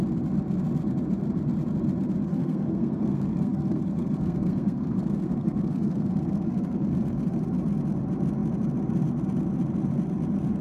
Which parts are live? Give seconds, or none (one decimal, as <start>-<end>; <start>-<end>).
0.0-2.3; 7.4-10.6